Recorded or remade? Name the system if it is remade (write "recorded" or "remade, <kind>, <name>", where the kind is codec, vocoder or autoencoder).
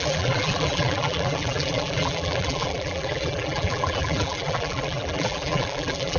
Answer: remade, vocoder, BigVGAN v2